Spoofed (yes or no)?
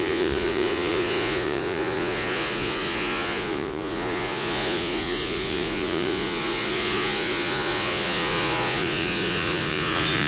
yes